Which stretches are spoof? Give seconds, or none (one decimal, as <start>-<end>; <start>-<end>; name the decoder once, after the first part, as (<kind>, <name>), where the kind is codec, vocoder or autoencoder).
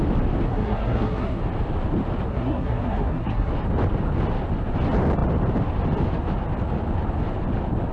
0.5-1.4 (codec, SNAC); 2.3-3.5